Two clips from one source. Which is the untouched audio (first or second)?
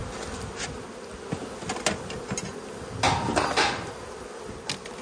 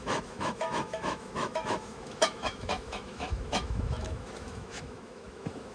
first